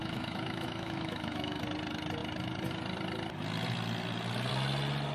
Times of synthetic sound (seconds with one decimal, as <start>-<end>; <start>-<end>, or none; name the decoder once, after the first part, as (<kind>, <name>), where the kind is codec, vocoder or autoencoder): 0.0-1.6 (autoencoder, DAC-VAE)